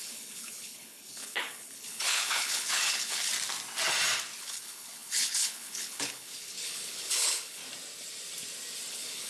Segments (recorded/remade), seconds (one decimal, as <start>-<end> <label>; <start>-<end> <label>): 0.0-3.3 remade; 3.3-4.4 recorded; 4.4-7.6 remade; 7.6-8.9 recorded; 8.9-9.3 remade